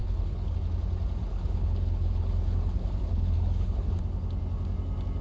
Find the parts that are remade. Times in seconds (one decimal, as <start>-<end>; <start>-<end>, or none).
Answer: 0.0-0.7; 1.2-3.9